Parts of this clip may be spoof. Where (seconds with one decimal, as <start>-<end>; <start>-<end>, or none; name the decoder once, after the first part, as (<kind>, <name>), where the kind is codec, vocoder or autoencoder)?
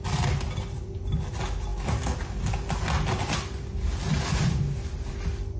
none